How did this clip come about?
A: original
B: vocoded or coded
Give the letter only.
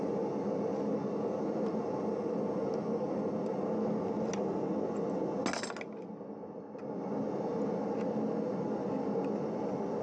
A